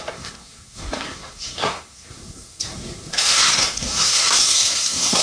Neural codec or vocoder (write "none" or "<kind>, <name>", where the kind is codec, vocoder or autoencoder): codec, SNAC